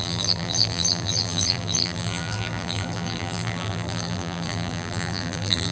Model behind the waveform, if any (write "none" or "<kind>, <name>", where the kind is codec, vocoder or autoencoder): vocoder, BigVGAN v2